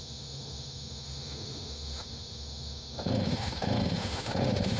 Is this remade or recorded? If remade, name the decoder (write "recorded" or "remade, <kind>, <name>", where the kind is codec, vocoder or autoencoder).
remade, autoencoder, DAC-VAE